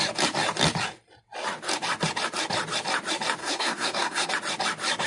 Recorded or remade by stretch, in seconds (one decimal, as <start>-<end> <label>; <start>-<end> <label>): 0.0-3.4 recorded; 3.4-4.3 remade; 4.3-5.1 recorded